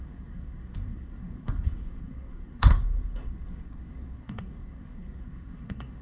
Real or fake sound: fake